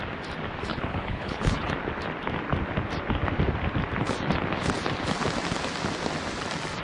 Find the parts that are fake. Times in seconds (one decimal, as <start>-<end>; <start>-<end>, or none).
0.7-1.7